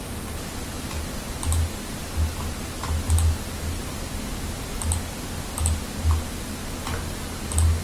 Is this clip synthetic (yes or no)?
no